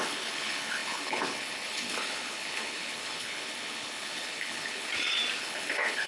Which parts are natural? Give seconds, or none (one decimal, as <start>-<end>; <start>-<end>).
4.9-5.4